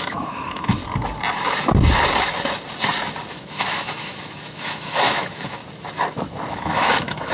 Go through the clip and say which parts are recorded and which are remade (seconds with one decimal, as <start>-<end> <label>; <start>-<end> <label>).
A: 0.0-0.8 remade; 0.8-3.3 recorded; 3.3-5.6 remade; 5.6-6.5 recorded; 6.5-7.3 remade